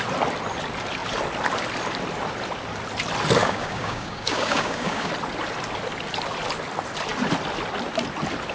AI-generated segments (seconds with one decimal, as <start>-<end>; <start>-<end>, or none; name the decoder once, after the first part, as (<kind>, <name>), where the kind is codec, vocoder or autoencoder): 3.4-5.1 (codec, DAC)